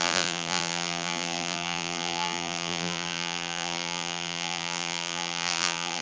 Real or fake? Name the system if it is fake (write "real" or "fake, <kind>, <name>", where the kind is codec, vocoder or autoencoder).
fake, vocoder, BigVGAN v2